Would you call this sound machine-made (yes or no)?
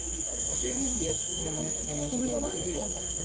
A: yes